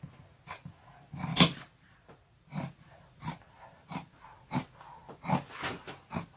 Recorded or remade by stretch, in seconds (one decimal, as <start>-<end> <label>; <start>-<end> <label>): 0.0-1.3 recorded; 1.3-4.2 remade; 4.2-6.4 recorded